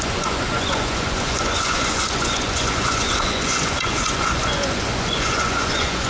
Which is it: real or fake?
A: fake